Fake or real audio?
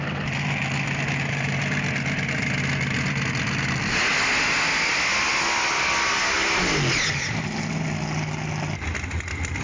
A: real